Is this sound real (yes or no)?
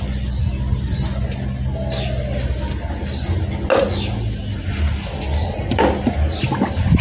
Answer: yes